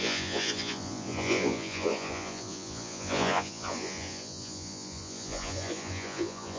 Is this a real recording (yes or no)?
no